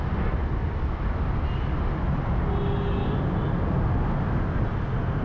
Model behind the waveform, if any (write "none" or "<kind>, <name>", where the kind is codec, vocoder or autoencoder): none